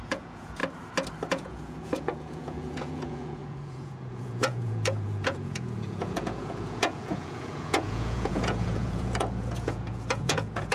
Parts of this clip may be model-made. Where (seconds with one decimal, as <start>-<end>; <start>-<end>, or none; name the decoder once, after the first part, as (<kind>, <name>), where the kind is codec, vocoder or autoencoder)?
0.0-0.6 (vocoder, Vocos); 1.3-10.7